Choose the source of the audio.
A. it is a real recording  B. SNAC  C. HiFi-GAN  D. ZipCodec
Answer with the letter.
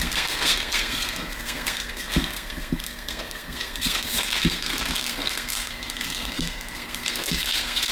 B